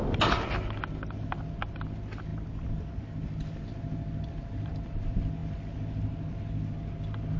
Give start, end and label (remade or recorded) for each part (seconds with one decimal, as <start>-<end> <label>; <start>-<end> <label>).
0.0-7.4 recorded